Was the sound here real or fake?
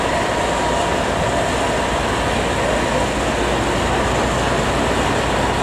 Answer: real